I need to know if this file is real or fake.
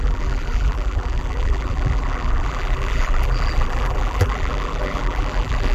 fake